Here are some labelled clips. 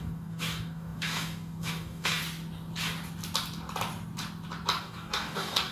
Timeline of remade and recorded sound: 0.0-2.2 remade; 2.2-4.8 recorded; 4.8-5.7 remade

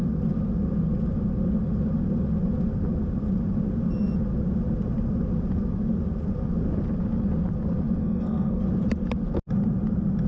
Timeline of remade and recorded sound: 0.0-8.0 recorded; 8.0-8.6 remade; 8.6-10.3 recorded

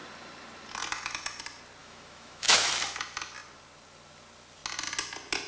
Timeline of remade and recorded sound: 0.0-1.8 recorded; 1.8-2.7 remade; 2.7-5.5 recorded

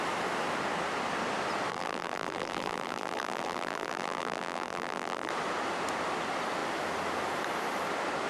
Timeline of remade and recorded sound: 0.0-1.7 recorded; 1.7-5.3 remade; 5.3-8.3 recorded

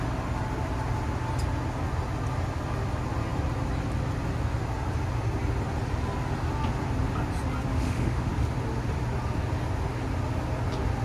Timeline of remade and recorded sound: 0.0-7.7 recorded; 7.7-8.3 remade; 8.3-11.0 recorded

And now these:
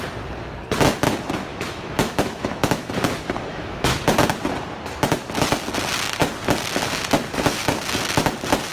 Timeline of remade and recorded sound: 0.0-1.5 recorded; 1.5-3.0 remade; 3.0-3.5 recorded; 3.5-4.0 remade; 4.0-8.7 recorded